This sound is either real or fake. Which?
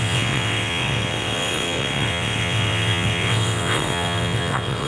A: fake